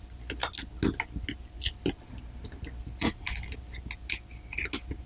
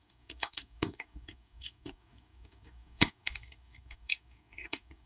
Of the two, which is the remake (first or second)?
second